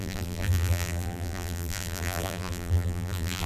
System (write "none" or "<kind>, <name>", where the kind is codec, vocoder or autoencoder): vocoder, BigVGAN v2